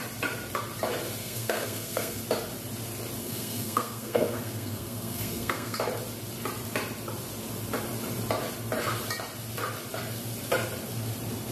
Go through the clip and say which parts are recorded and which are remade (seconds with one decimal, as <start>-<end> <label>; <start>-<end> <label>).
0.0-1.2 recorded; 1.2-2.2 remade; 2.2-3.2 recorded; 3.2-5.8 remade; 5.8-11.5 recorded